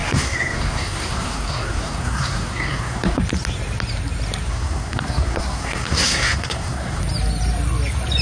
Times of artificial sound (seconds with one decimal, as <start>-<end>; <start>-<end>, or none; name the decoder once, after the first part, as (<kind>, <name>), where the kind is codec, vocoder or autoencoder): 0.0-3.2 (codec, SNAC); 4.5-7.0